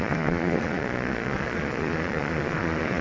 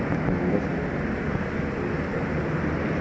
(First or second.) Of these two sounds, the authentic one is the second